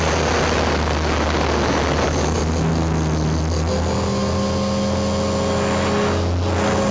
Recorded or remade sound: recorded